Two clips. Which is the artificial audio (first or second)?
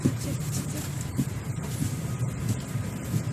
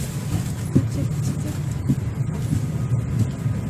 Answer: first